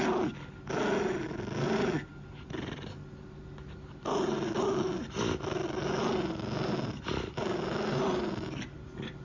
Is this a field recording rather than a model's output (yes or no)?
yes